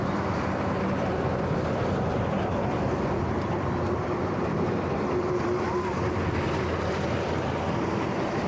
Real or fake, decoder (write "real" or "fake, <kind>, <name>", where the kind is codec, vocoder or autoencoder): fake, vocoder, BigVGAN v2